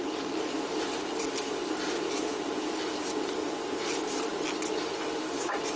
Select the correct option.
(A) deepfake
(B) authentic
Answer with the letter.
B